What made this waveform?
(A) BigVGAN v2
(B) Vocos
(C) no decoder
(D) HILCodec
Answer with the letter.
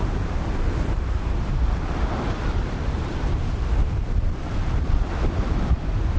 A